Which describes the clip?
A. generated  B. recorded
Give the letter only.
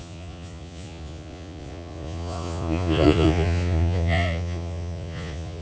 A